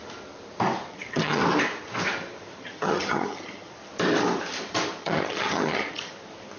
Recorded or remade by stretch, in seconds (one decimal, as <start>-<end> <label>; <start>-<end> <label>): 0.0-0.9 recorded; 0.9-1.4 remade; 1.4-2.6 recorded; 2.6-3.7 remade; 3.7-5.0 recorded; 5.0-6.1 remade; 6.1-6.6 recorded